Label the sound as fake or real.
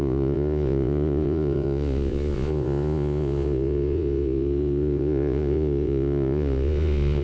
fake